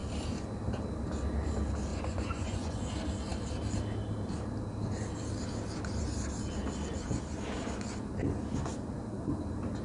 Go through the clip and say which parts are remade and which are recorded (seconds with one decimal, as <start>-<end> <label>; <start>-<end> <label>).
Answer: 0.0-1.9 recorded; 1.9-2.8 remade; 2.8-9.8 recorded